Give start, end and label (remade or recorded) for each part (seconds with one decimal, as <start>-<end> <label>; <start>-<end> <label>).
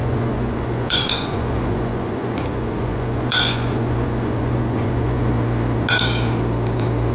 0.0-5.3 remade; 5.3-7.1 recorded